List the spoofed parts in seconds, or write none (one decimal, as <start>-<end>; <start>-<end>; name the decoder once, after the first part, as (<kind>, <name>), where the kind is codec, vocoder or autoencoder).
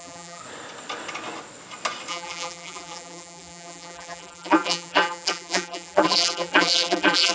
0.0-0.4 (vocoder, BigVGAN v2); 2.1-7.3